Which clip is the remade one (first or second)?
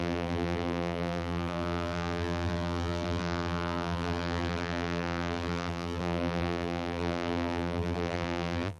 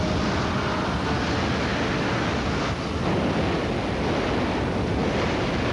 first